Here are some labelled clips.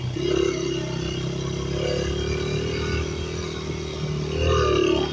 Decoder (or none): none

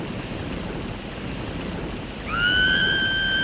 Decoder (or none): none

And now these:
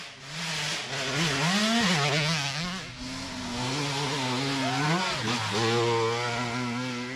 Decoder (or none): none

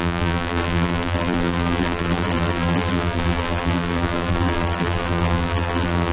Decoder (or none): vocoder, BigVGAN v2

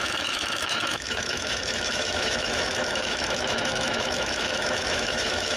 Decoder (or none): autoencoder, DAC-VAE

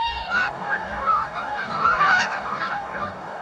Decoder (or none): codec, DAC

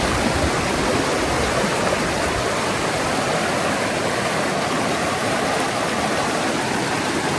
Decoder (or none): none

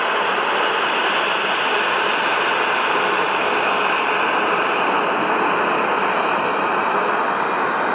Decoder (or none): none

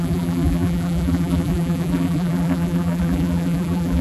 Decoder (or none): vocoder, BigVGAN v2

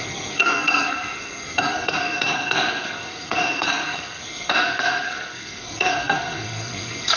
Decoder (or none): codec, SNAC